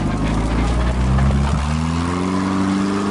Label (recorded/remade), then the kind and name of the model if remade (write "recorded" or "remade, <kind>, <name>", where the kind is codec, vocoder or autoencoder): recorded